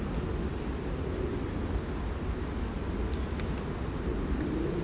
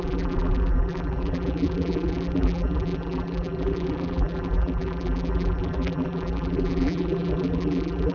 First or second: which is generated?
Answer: second